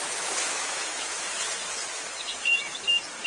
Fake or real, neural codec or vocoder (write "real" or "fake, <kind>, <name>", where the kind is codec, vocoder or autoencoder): fake, autoencoder, DAC-VAE